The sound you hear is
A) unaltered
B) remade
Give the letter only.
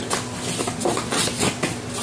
A